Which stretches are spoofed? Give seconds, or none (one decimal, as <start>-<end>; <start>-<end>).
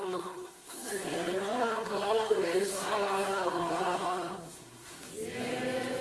0.0-5.1